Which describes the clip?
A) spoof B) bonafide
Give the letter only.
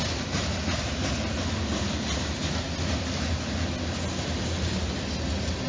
B